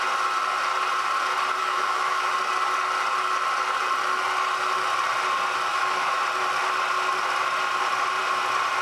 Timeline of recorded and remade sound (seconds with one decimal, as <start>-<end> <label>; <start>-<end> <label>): 0.0-1.6 recorded; 1.6-2.3 remade; 2.3-5.7 recorded; 5.7-6.2 remade; 6.2-8.8 recorded